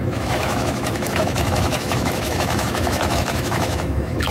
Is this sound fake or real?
fake